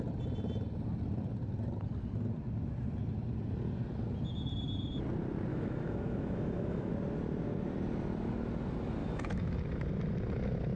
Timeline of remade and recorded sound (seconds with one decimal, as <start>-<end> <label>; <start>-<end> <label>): 0.0-5.5 recorded; 5.5-6.9 remade; 6.9-9.0 recorded; 9.0-9.6 remade; 9.6-10.8 recorded